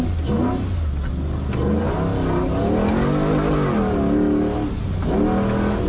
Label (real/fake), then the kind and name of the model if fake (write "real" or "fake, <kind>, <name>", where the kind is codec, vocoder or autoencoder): real